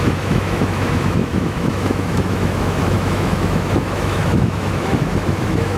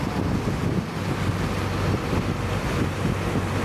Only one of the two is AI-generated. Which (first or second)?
first